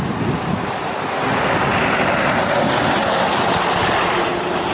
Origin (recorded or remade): recorded